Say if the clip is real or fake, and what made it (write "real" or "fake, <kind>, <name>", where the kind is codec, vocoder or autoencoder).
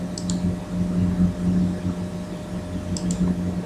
real